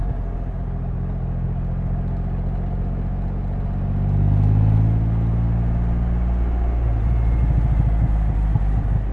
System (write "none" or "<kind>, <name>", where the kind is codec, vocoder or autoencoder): none